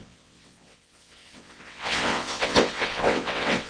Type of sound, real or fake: fake